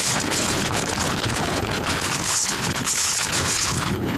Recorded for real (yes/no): no